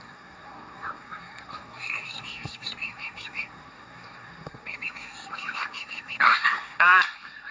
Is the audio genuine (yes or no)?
no